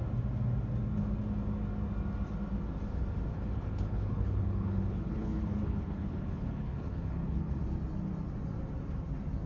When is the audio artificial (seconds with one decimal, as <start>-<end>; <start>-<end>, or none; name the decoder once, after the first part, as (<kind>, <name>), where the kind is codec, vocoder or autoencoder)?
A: 3.3-7.6 (codec, HILCodec)